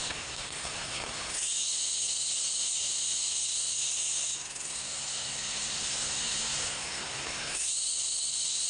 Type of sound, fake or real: fake